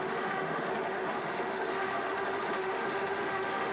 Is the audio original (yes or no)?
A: no